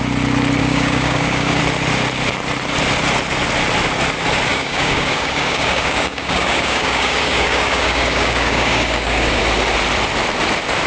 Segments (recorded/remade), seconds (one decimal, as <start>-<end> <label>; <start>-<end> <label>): 0.0-0.6 recorded; 0.6-1.6 remade; 1.6-4.5 recorded; 4.5-9.4 remade; 9.4-10.9 recorded